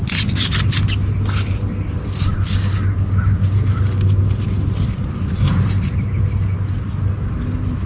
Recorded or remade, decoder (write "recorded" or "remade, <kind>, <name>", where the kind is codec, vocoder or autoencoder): recorded